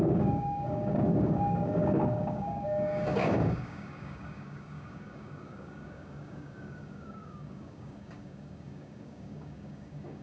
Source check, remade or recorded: remade